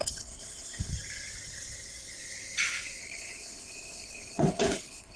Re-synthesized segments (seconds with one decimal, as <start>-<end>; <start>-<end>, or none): 0.0-0.9; 3.0-5.2

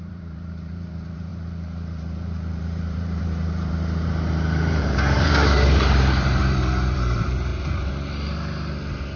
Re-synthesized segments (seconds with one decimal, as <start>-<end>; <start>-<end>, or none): 0.0-7.5

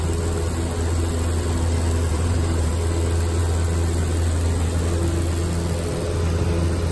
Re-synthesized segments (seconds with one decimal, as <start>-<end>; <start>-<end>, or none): 2.1-2.7

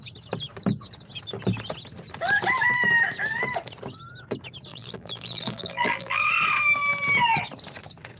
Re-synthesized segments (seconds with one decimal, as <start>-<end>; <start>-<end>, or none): 4.7-6.2

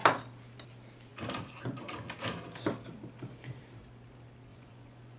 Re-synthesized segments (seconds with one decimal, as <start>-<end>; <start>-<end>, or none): 4.5-5.2

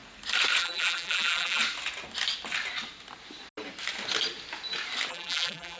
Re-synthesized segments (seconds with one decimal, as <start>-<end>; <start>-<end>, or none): 0.6-1.6; 5.1-5.8

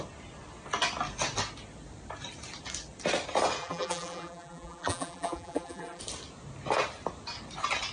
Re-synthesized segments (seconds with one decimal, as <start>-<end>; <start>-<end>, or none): 3.6-6.0